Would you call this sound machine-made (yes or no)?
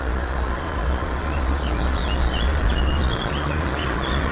yes